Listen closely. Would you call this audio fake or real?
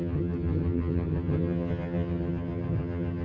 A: fake